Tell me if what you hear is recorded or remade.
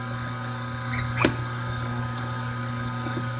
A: remade